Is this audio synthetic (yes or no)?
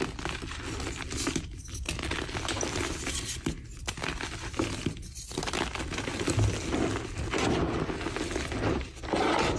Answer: no